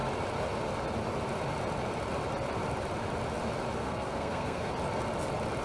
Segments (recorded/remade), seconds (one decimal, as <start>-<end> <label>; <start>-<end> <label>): 0.0-3.8 recorded; 3.8-4.7 remade; 4.7-5.6 recorded